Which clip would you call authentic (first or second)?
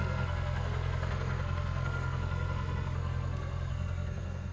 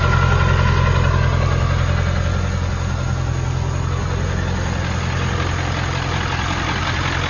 second